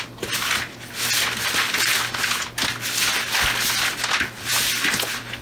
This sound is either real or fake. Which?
real